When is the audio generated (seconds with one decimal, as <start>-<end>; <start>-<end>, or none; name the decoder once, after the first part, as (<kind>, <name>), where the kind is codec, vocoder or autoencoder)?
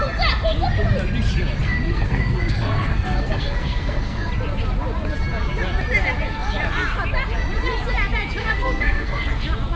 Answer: 1.6-4.3 (codec, SNAC); 8.4-9.3